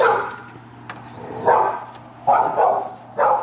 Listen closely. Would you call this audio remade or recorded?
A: recorded